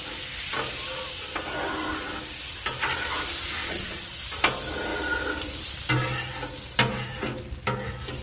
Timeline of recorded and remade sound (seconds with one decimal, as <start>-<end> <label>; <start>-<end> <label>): 0.0-3.6 recorded; 3.6-4.2 remade; 4.2-8.2 recorded